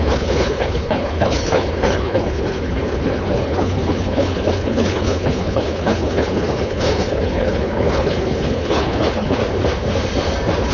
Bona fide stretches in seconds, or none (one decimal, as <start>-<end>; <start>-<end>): 9.4-10.7